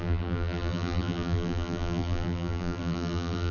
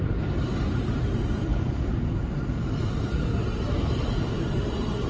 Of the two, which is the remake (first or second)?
first